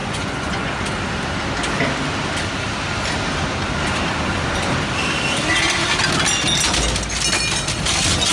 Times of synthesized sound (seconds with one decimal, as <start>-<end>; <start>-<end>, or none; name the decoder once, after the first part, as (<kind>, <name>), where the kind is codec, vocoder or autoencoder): 0.0-0.7 (vocoder, Vocos)